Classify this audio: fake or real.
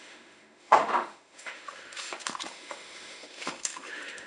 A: fake